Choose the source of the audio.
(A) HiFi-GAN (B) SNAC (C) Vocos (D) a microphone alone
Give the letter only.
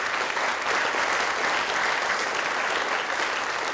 D